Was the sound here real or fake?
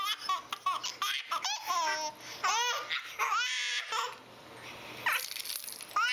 real